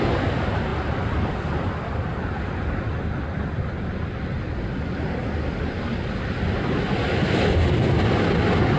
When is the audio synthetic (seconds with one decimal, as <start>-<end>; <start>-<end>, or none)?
0.7-1.7